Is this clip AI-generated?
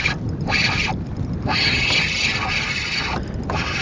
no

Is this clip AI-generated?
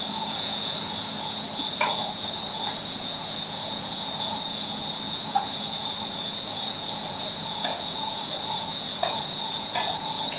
yes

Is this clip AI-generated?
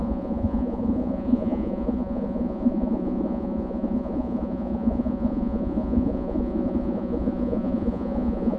yes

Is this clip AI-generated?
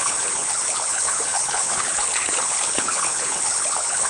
yes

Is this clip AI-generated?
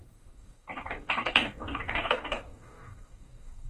yes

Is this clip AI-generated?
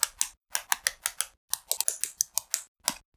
no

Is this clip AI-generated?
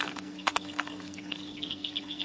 yes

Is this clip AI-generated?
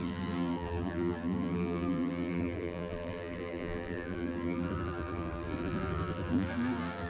yes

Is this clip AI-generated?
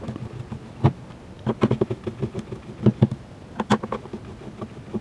no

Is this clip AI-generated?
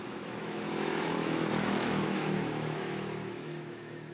yes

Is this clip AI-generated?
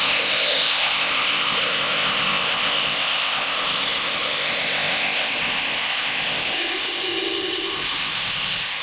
yes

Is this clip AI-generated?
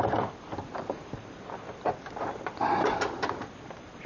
no